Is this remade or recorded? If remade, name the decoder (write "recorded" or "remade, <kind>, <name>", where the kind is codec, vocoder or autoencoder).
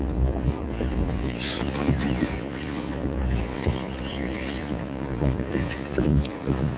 remade, vocoder, Vocos